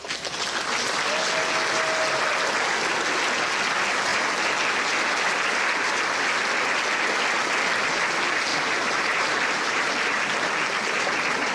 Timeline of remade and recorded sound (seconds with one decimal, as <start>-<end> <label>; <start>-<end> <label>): 0.0-8.5 recorded; 8.5-10.2 remade; 10.2-11.5 recorded